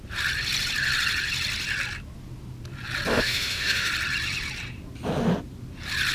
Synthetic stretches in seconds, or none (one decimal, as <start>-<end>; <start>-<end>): 3.1-3.9